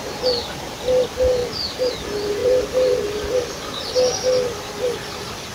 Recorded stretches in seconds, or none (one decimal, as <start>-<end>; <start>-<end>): 0.0-1.4; 1.9-2.4; 3.6-5.5